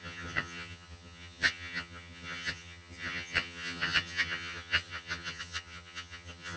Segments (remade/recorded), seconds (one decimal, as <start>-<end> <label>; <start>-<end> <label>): 0.0-6.6 remade